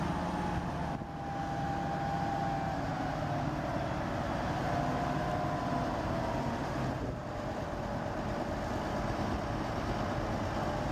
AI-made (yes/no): no